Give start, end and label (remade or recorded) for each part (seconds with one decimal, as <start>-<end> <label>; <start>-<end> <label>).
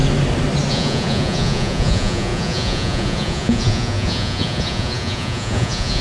0.0-0.7 recorded; 0.7-6.0 remade